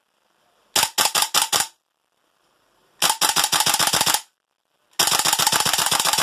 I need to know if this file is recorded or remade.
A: recorded